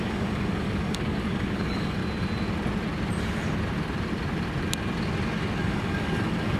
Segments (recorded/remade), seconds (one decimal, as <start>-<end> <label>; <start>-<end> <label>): 0.0-2.0 remade; 2.0-5.6 recorded; 5.6-6.6 remade